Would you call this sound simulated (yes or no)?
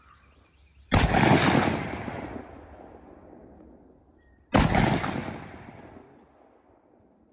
no